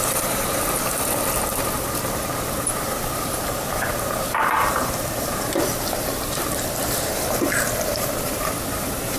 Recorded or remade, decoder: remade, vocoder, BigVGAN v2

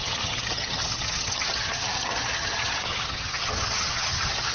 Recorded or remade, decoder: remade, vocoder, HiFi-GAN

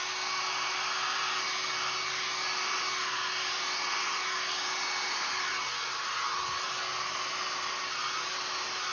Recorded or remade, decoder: recorded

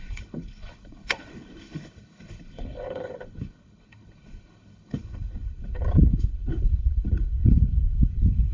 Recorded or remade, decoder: remade, codec, HILCodec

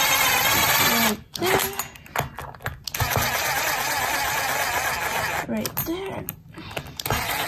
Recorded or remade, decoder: recorded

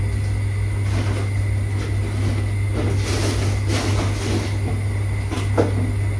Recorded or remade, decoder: recorded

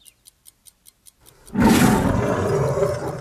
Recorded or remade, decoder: recorded